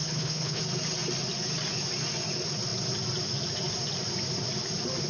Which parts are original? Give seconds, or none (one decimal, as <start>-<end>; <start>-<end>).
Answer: 0.6-5.1